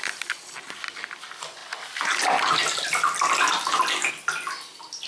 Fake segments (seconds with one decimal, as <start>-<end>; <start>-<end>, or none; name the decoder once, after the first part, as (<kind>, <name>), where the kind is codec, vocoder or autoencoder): none